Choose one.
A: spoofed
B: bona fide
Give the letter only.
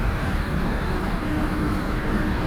A